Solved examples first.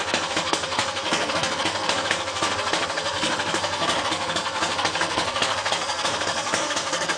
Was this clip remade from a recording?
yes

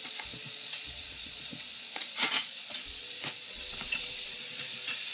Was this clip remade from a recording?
yes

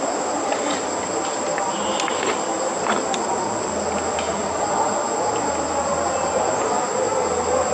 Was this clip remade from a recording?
no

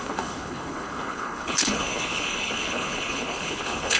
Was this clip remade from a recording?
yes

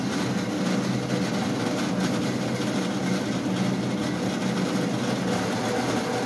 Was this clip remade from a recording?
no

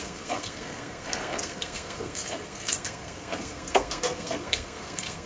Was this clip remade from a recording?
yes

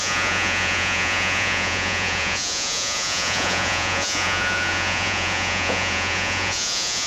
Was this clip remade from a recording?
yes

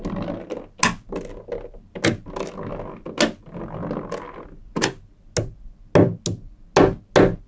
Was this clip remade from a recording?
no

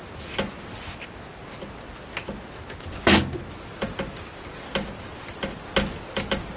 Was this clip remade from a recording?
no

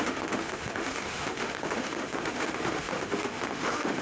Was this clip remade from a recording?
yes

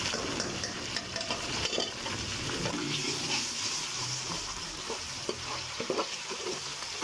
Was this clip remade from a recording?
yes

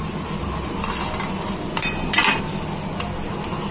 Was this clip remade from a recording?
no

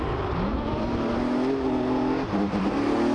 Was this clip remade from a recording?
no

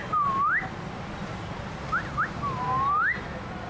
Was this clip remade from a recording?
no